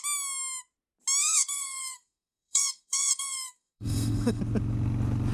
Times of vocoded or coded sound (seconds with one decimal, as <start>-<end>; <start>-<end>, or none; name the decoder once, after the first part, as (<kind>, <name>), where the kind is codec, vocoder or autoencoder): 1.2-4.4 (codec, SNAC)